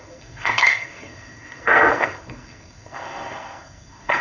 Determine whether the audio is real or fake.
fake